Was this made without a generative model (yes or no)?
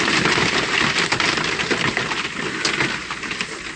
yes